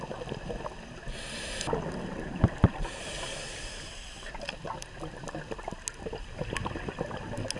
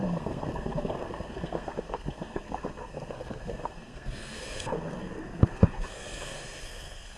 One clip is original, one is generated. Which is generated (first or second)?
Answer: second